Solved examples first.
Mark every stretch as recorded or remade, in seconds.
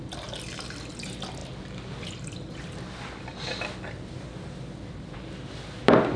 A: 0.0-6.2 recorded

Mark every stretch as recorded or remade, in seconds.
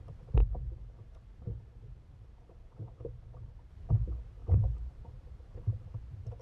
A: 0.0-0.4 recorded; 0.4-3.7 remade; 3.7-4.4 recorded; 4.4-5.9 remade; 5.9-6.4 recorded